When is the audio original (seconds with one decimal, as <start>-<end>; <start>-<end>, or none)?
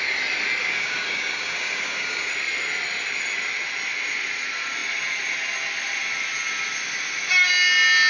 0.0-0.6; 2.3-8.1